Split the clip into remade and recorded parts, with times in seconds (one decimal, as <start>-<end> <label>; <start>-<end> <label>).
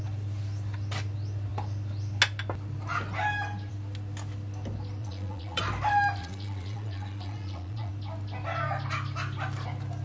0.0-5.0 recorded; 5.0-5.6 remade; 5.6-6.2 recorded; 6.2-7.9 remade; 7.9-10.0 recorded